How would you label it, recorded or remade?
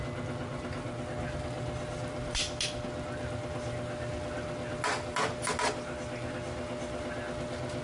recorded